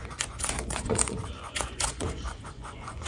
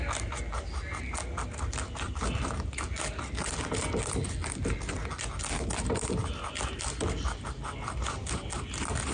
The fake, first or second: first